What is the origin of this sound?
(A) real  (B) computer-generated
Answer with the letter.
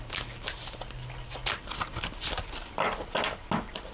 A